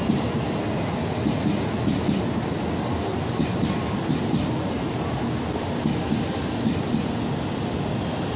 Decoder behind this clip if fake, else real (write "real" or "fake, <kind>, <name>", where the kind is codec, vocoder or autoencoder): real